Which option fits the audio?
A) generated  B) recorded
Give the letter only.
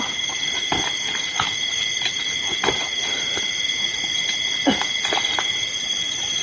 B